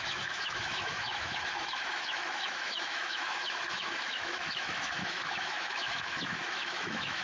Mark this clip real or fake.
fake